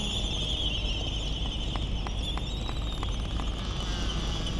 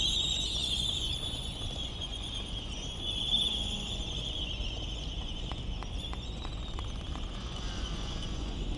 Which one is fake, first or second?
second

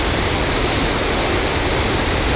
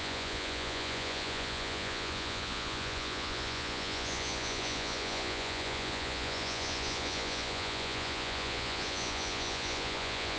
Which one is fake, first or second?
second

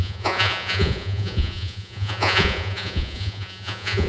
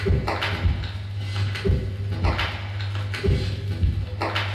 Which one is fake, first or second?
first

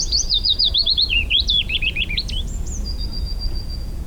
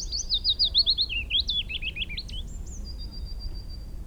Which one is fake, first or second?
first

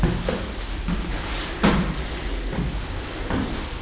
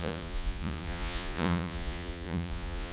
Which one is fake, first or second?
second